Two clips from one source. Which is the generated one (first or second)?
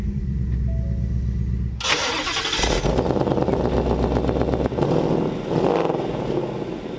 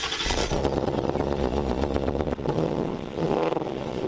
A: second